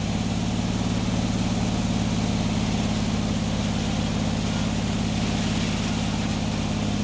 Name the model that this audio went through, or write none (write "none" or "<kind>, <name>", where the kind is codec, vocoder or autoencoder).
none